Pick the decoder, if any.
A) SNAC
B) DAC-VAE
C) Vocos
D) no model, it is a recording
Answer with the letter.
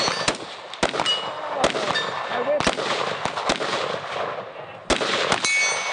D